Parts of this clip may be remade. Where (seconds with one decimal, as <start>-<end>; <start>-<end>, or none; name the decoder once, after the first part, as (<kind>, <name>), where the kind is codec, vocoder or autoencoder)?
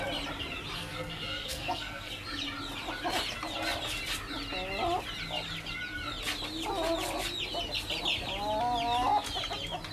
0.8-2.1 (codec, SNAC)